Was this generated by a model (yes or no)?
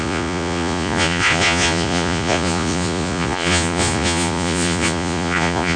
yes